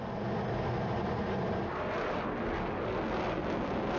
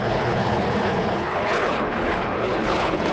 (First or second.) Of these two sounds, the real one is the first